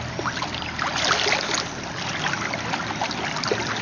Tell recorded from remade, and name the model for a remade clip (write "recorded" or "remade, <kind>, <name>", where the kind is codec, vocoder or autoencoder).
recorded